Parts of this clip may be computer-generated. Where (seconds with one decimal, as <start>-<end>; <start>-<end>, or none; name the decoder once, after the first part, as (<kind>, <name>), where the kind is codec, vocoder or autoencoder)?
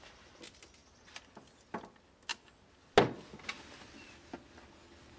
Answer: none